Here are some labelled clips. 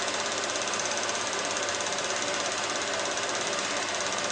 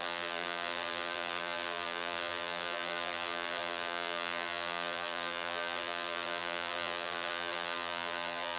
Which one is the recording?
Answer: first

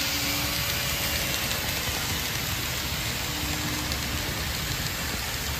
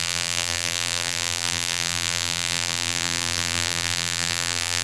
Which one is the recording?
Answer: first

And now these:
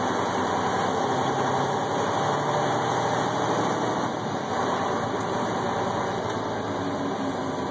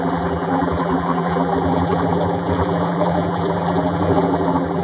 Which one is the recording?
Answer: first